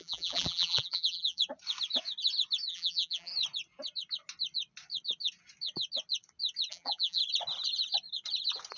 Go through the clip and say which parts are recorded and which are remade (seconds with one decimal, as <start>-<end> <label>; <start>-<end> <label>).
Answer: 0.0-1.4 remade; 1.4-2.7 recorded; 2.7-3.3 remade; 3.3-6.7 recorded; 6.7-7.2 remade; 7.2-8.8 recorded